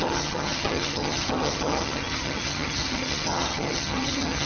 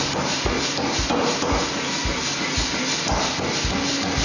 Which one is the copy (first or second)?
first